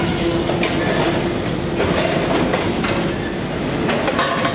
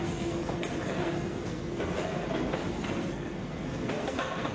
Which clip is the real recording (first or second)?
first